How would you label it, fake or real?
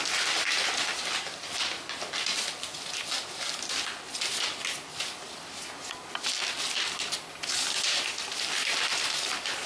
real